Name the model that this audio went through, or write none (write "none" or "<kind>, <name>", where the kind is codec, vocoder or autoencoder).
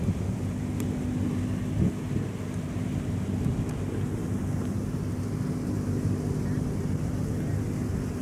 none